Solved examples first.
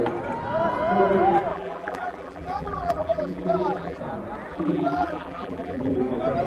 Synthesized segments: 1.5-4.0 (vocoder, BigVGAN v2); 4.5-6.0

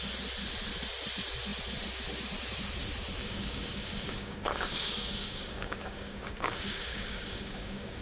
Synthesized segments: 3.2-8.0 (codec, DAC)

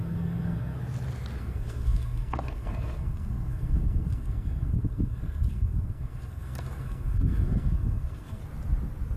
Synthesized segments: 0.0-0.8 (codec, SNAC); 1.4-8.4